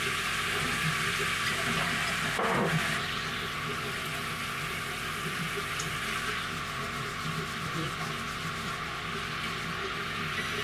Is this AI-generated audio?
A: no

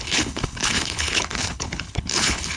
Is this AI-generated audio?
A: yes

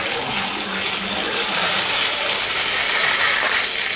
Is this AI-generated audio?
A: no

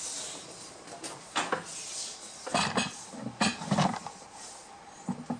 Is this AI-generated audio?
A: no